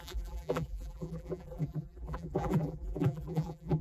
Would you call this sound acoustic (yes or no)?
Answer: no